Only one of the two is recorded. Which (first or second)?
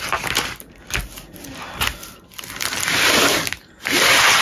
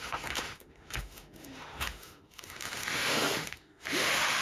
first